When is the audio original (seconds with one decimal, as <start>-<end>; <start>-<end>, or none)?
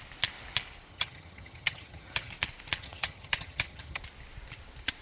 0.0-0.9; 2.3-2.8; 4.0-5.0